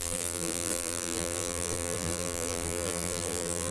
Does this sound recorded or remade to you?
remade